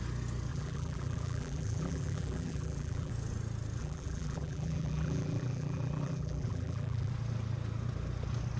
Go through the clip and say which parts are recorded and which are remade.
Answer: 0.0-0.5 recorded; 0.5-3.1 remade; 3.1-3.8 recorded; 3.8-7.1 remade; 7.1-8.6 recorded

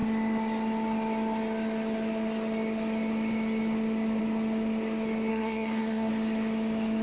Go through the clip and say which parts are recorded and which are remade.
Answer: 0.0-5.3 recorded; 5.3-6.1 remade; 6.1-7.0 recorded